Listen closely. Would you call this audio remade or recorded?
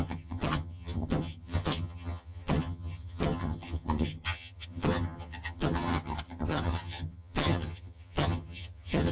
remade